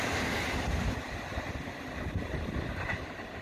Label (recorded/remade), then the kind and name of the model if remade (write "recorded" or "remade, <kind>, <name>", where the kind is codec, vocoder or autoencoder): recorded